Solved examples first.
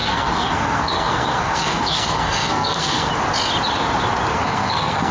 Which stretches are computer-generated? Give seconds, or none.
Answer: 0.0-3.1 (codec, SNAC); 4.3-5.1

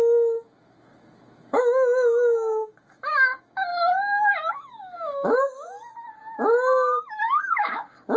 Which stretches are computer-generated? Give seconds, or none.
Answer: 0.0-3.7 (autoencoder, DAC-VAE); 4.5-5.9; 7.0-8.2

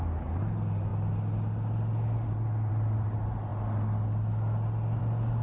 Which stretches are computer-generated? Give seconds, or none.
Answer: none

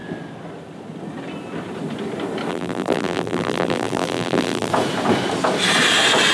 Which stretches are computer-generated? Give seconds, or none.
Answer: 2.5-4.7 (vocoder, BigVGAN v2)

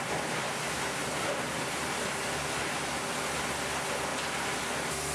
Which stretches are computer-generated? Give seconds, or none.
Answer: none